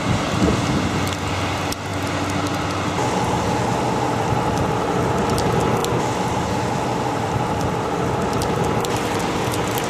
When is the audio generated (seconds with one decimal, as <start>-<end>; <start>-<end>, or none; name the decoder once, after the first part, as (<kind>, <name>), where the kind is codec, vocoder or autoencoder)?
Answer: 5.8-9.2 (vocoder, BigVGAN v2)